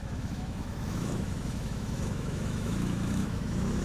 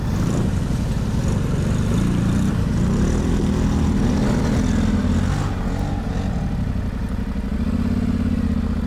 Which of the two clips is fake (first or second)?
first